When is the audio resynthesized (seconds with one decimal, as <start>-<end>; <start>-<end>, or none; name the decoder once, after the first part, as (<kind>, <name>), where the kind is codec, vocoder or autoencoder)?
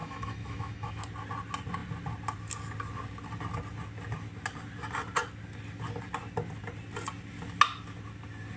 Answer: 0.0-1.0 (autoencoder, DAC-VAE)